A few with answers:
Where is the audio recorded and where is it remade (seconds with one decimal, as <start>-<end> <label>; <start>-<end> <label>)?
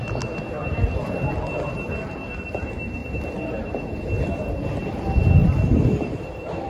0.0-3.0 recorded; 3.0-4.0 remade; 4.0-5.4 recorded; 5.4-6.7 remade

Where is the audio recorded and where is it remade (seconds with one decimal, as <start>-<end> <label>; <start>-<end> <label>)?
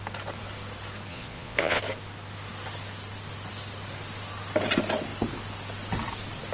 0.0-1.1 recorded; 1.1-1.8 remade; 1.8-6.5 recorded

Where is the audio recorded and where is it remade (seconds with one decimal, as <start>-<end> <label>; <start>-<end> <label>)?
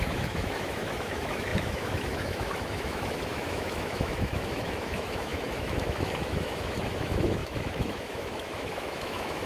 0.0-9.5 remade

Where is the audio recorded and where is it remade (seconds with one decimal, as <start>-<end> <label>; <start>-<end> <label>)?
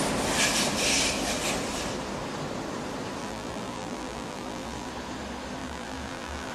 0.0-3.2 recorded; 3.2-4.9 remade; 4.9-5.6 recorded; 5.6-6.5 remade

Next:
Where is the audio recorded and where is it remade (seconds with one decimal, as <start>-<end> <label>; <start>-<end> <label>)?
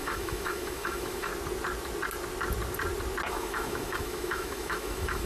0.0-1.3 remade; 1.3-3.3 recorded; 3.3-5.3 remade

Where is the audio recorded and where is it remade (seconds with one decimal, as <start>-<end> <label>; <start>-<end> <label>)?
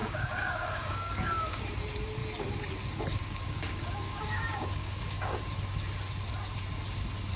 0.0-1.6 remade; 1.6-3.1 recorded; 3.1-5.4 remade; 5.4-7.4 recorded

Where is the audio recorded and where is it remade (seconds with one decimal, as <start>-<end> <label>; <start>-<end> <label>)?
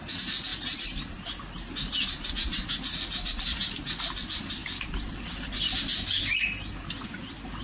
0.0-7.6 recorded